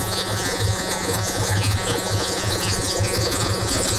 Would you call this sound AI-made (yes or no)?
yes